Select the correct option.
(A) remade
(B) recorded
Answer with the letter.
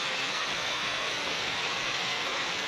A